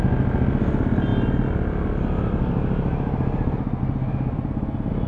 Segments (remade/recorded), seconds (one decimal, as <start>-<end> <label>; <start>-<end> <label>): 0.0-5.1 recorded